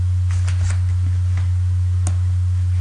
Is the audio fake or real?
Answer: real